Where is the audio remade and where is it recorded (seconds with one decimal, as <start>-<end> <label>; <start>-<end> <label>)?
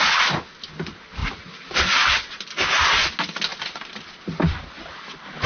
0.0-1.2 recorded; 1.2-2.3 remade; 2.3-3.5 recorded; 3.5-4.1 remade; 4.1-5.5 recorded